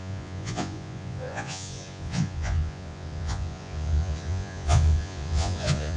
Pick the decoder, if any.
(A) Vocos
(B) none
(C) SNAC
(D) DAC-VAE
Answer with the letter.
A